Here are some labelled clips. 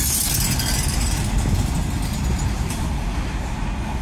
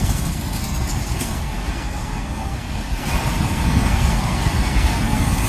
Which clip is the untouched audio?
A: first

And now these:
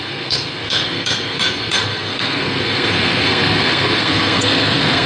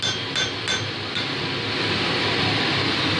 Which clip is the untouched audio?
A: second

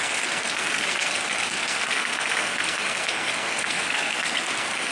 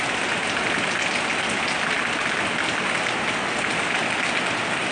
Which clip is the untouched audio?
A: second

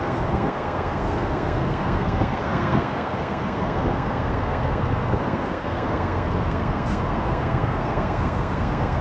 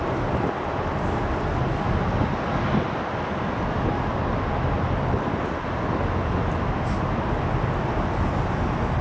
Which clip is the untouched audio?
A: second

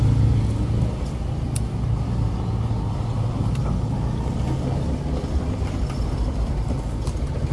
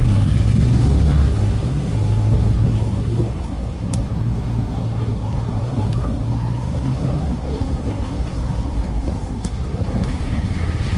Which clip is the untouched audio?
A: first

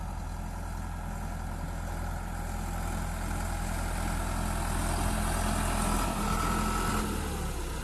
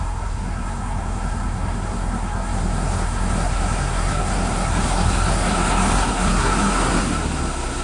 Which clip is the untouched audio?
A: first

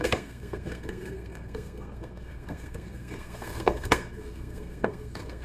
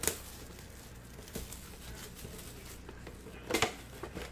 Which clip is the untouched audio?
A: second